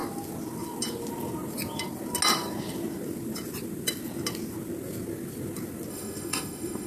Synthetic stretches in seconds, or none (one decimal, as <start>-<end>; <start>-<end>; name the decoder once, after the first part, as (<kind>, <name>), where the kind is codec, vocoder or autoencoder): 5.9-6.9 (autoencoder, DAC-VAE)